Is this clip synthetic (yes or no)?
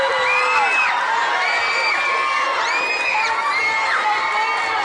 no